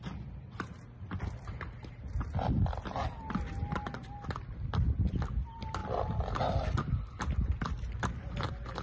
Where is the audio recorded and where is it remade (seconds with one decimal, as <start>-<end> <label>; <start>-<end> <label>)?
0.0-5.8 recorded; 5.8-8.1 remade; 8.1-8.8 recorded